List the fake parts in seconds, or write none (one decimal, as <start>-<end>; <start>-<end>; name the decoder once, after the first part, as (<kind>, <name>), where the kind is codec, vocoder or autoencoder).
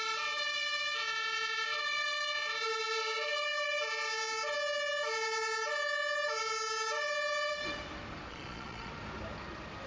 8.3-8.9 (vocoder, Vocos)